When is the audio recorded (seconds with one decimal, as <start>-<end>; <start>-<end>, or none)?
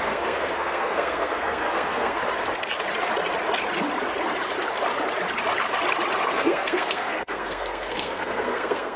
2.2-6.3